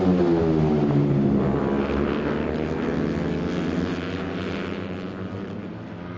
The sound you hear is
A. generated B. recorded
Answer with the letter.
B